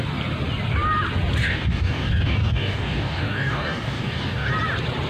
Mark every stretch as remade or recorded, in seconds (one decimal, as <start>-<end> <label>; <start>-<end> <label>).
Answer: 0.0-1.4 recorded; 1.4-4.5 remade; 4.5-5.1 recorded